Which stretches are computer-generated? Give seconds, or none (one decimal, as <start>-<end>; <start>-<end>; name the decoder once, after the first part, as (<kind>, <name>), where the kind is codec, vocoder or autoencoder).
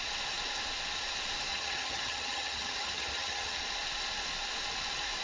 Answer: 1.5-3.6 (vocoder, HiFi-GAN)